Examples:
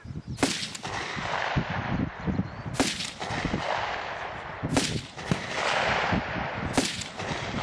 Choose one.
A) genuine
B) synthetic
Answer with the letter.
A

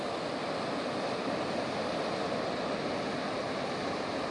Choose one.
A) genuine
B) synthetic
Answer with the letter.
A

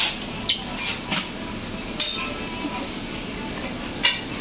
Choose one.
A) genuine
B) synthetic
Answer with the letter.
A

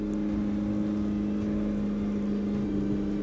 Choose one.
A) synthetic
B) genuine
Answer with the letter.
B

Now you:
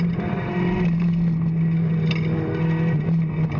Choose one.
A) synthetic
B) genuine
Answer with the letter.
B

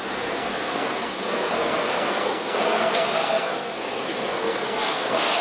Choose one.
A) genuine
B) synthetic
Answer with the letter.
B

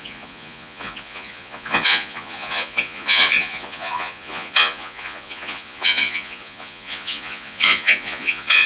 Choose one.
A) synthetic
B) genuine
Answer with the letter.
A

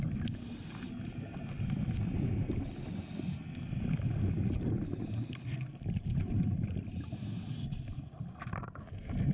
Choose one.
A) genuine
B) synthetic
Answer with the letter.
A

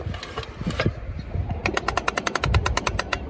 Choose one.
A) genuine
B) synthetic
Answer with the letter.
A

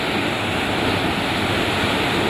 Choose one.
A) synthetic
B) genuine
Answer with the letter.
B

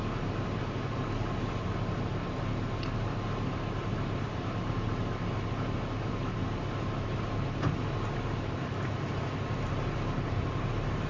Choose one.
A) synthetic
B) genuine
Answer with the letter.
B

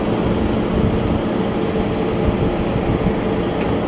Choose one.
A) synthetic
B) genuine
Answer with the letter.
B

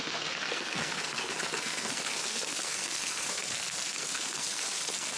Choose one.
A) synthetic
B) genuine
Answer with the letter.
A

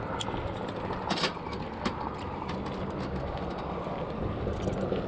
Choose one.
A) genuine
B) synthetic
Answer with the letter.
A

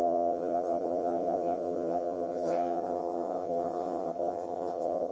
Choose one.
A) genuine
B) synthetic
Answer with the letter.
B